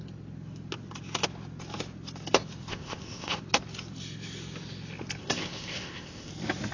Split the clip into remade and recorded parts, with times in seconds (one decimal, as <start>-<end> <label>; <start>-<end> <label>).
0.0-2.7 recorded; 2.7-3.4 remade; 3.4-5.2 recorded; 5.2-6.3 remade; 6.3-6.7 recorded